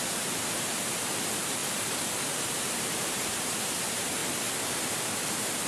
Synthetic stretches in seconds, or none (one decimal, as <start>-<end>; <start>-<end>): 0.0-1.6; 2.3-4.2